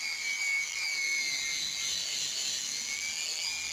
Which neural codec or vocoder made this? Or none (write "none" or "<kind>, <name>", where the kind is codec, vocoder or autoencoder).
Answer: none